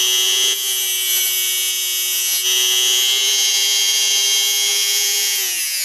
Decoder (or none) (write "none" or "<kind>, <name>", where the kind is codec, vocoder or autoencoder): vocoder, Vocos